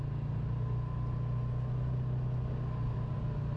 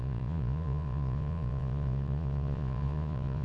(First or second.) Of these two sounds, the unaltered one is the first